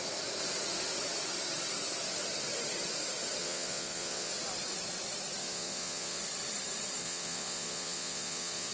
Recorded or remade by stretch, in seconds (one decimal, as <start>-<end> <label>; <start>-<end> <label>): 0.0-3.4 recorded; 3.4-4.3 remade; 4.3-5.4 recorded; 5.4-6.2 remade; 6.2-7.0 recorded; 7.0-8.7 remade